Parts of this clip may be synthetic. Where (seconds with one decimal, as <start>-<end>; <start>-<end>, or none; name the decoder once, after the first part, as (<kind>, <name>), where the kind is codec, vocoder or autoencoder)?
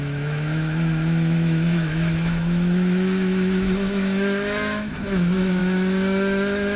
0.0-6.8 (autoencoder, DAC-VAE)